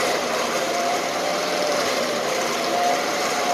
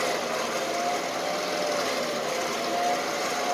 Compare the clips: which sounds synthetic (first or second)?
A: first